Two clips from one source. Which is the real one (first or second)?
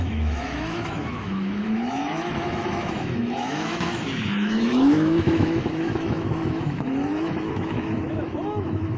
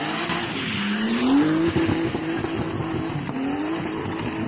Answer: second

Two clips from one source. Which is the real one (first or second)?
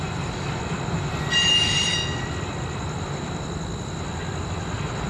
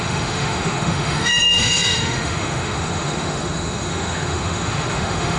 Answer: first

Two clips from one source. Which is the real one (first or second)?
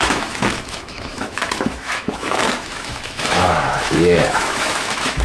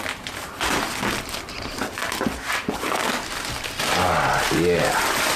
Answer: second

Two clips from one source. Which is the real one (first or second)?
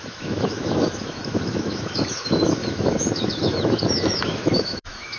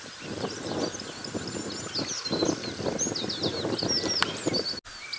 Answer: second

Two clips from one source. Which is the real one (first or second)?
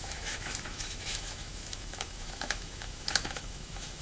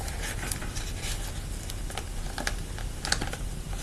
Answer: second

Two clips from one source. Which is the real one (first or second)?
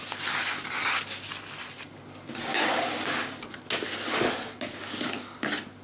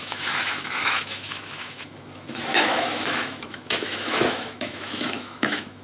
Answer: first